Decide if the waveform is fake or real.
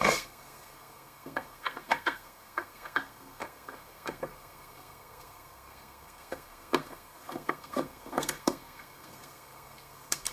fake